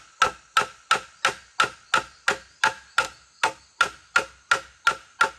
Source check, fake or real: real